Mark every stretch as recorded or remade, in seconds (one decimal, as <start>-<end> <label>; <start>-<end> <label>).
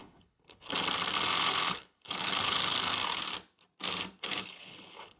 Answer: 0.0-0.7 remade; 0.7-1.7 recorded; 1.7-2.9 remade; 2.9-4.2 recorded; 4.2-5.2 remade